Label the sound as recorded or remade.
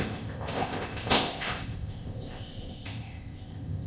remade